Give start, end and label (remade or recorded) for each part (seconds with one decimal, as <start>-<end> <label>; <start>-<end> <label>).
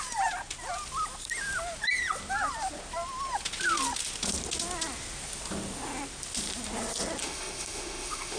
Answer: 0.0-7.2 recorded; 7.2-8.4 remade